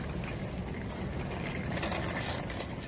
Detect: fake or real real